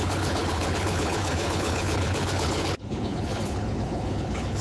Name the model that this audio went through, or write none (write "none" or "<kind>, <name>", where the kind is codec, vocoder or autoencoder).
codec, HILCodec